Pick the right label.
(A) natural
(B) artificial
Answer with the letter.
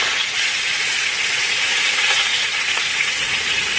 B